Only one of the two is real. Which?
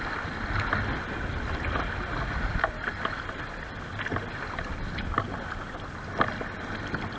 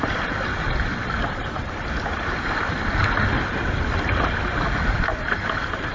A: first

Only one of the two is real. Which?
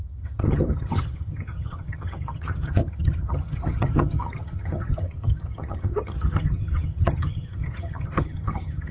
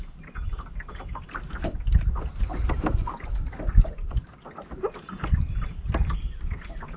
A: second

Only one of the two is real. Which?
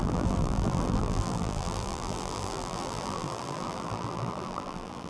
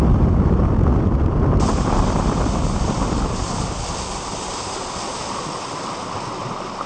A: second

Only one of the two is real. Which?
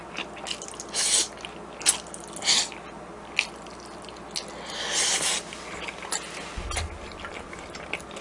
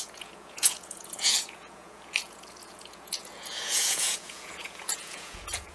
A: first